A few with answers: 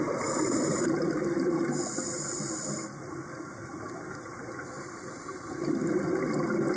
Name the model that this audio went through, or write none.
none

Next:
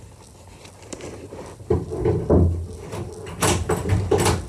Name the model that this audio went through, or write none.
none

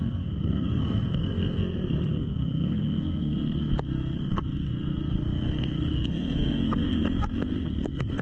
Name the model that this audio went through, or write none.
codec, SNAC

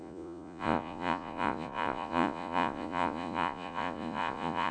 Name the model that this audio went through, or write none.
vocoder, Vocos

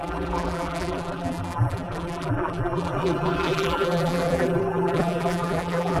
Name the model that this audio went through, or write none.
vocoder, BigVGAN v2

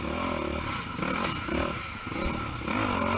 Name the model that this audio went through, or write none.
none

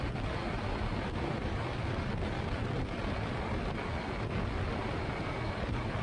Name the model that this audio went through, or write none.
none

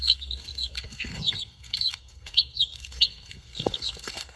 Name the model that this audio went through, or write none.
codec, SNAC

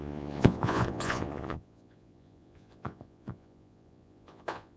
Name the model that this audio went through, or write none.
vocoder, Vocos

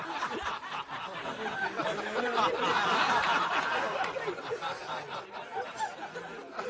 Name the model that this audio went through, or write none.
none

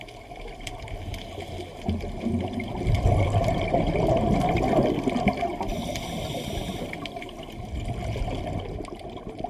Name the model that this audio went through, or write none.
none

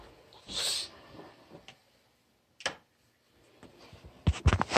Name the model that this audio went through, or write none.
none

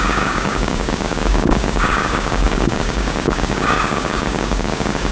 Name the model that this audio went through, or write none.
codec, DAC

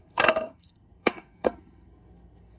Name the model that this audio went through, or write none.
codec, SNAC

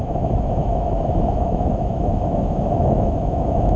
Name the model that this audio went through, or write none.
autoencoder, DAC-VAE